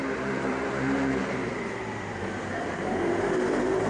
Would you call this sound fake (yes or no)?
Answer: yes